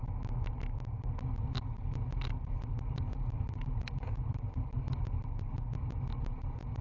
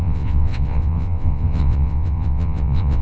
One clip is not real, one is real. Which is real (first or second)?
first